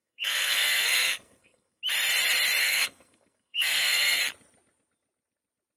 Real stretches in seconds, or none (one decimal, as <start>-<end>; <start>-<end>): 1.8-2.6; 4.2-5.8